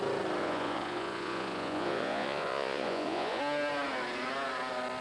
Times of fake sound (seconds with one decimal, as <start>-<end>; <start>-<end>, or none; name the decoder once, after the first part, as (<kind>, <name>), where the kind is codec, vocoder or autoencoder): 0.4-3.4 (vocoder, Vocos)